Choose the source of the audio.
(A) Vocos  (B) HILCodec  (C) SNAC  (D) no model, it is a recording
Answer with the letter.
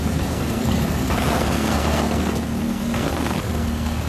C